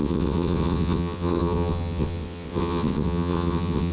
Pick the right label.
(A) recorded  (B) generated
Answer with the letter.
B